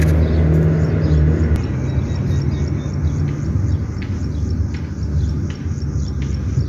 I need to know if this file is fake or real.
real